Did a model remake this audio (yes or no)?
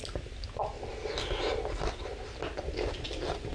no